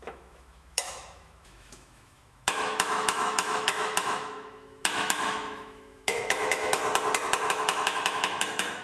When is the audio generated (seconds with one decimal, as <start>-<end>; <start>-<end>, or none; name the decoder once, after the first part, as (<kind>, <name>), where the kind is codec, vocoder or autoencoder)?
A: 0.0-6.8 (autoencoder, DAC-VAE); 7.5-8.8